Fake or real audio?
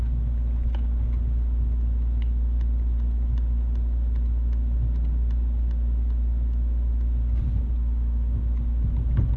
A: real